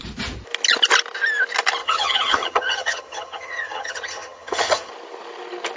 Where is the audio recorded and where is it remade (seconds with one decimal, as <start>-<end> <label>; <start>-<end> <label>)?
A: 0.0-1.8 recorded; 1.8-4.9 remade; 4.9-5.8 recorded